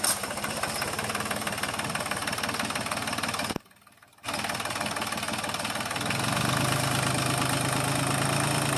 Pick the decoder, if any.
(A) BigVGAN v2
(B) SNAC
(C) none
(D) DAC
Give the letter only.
C